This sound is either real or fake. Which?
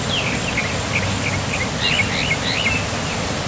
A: real